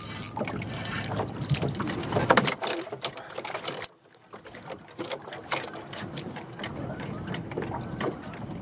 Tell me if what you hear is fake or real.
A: real